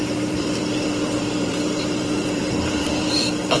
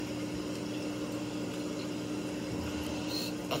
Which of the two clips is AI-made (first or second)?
first